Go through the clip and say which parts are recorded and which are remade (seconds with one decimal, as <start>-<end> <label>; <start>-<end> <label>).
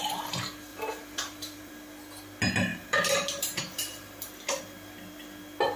0.0-0.7 recorded; 0.7-1.7 remade; 1.7-2.7 recorded; 2.7-4.3 remade; 4.3-5.8 recorded